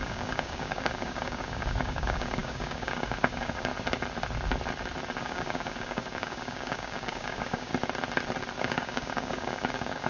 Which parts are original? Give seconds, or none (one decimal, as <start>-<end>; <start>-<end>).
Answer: 3.7-5.2; 7.7-8.6